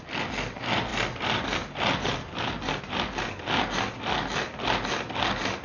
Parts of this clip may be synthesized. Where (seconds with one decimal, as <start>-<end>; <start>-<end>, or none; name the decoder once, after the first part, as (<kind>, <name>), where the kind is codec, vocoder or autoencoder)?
none